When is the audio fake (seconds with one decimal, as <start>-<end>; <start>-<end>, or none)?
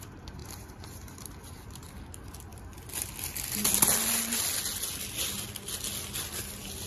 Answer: none